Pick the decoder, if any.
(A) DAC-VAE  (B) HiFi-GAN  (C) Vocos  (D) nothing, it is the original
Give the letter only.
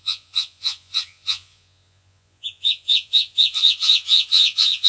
C